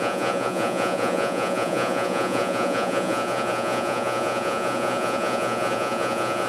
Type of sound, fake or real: fake